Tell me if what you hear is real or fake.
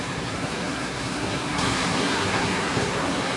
fake